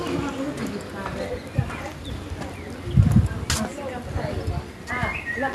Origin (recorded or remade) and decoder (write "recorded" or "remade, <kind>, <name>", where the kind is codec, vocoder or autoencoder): recorded